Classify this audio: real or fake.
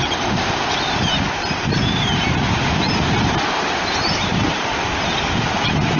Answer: fake